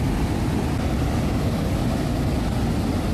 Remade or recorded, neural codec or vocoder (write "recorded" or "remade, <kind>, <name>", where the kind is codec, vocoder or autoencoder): recorded